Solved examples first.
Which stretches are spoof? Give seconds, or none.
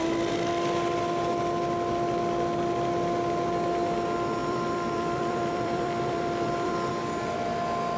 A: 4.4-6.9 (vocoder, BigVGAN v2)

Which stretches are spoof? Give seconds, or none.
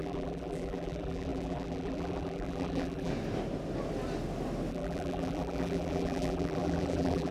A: 0.0-3.1 (vocoder, BigVGAN v2); 4.7-7.3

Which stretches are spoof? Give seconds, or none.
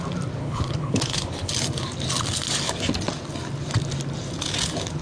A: 0.4-1.5 (codec, HILCodec)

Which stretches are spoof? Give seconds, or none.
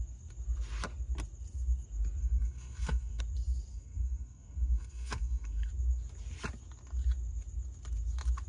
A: 2.2-3.2 (codec, SNAC); 3.7-5.7